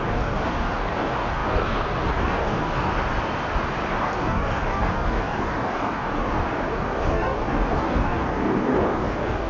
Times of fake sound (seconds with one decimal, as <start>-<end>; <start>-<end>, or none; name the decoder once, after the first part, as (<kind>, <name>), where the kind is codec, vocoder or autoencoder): 0.0-2.9 (codec, DAC); 3.9-9.5